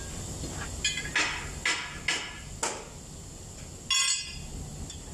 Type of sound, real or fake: real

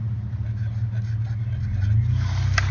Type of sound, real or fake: real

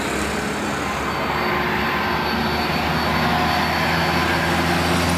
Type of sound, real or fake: real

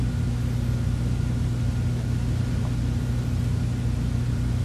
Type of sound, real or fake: real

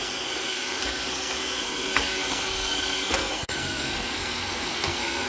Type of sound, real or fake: fake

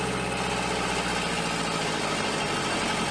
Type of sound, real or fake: real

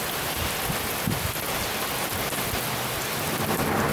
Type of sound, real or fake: real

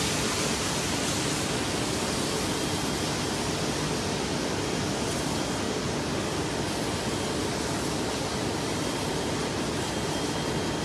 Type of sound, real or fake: real